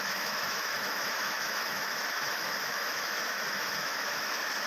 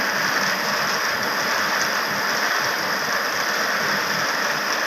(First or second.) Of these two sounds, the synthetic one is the first